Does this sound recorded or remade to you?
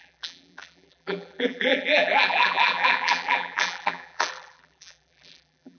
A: remade